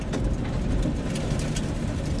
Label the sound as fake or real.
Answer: real